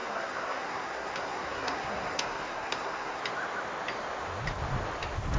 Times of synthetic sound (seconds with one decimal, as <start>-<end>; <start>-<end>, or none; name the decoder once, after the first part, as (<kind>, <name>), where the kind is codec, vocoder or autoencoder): 0.0-3.2 (codec, SNAC)